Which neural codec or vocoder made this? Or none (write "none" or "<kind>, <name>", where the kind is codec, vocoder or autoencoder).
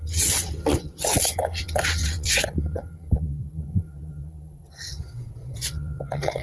vocoder, WaveNeXt